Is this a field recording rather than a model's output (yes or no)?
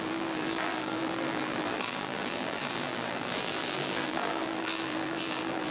no